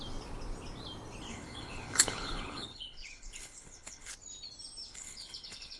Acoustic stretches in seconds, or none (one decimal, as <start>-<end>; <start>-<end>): 0.0-1.3; 4.1-4.9